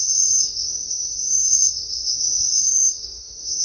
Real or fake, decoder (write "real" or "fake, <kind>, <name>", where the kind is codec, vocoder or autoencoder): fake, autoencoder, DAC-VAE